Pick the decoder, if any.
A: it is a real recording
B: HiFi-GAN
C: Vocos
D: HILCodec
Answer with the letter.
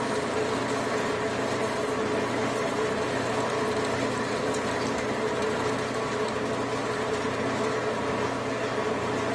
A